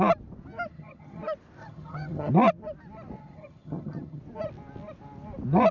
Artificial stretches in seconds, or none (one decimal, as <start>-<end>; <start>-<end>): 0.7-1.2; 1.6-2.3; 3.2-4.2